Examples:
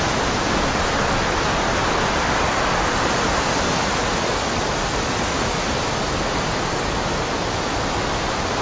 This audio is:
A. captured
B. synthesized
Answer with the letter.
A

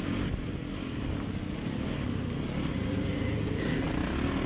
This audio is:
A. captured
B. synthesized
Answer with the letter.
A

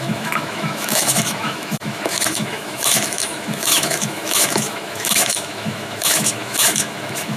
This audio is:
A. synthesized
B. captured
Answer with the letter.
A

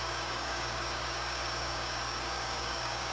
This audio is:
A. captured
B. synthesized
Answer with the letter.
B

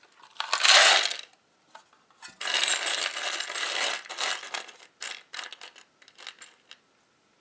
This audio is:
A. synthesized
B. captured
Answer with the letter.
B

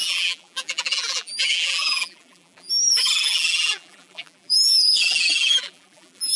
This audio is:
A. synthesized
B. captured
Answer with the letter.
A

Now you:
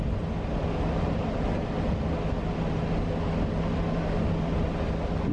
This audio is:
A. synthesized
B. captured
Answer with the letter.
B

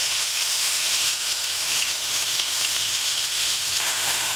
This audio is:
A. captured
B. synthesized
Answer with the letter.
B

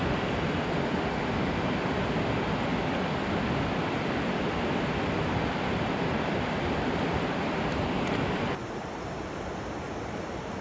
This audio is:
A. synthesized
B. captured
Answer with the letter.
B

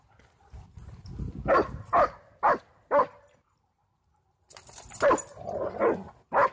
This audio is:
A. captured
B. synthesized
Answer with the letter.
A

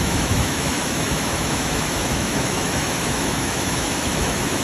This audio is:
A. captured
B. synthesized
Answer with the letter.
B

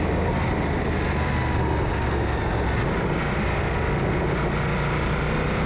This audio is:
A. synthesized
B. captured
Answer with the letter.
B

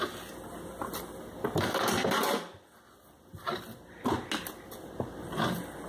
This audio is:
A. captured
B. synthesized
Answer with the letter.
A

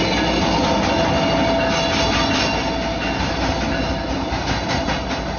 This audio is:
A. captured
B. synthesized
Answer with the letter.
A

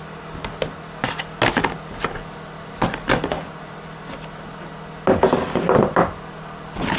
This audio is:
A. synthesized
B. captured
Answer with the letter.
B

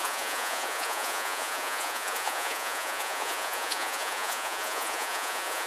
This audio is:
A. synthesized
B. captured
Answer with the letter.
A